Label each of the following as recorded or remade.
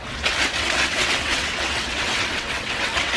remade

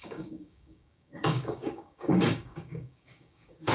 remade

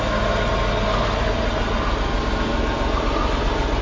recorded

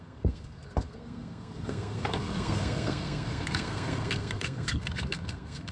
remade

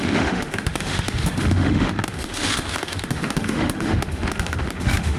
remade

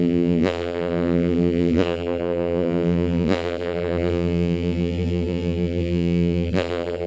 remade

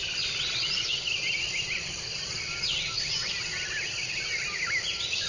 recorded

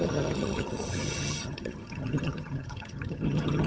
remade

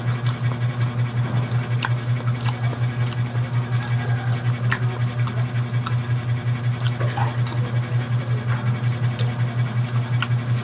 recorded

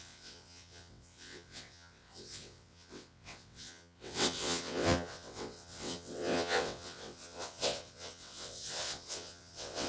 remade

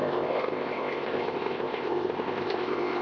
remade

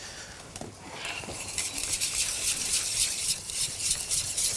remade